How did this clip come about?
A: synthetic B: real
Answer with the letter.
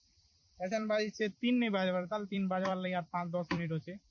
A